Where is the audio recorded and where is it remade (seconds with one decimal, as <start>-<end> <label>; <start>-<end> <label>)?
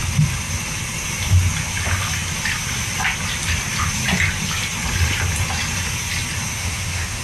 0.0-6.5 recorded; 6.5-7.2 remade